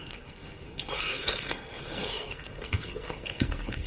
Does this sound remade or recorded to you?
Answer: remade